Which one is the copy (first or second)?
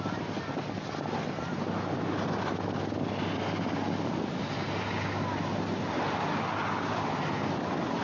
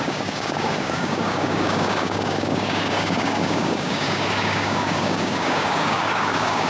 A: second